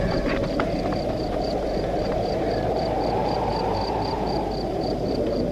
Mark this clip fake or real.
fake